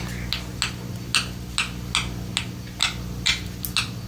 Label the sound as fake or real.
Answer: real